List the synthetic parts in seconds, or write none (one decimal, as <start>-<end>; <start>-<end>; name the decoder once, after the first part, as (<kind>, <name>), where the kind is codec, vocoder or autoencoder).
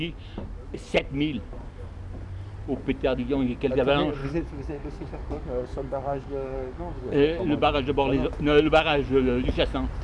4.2-7.4 (codec, DAC)